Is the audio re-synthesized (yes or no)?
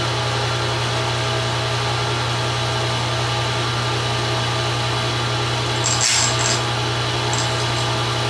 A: no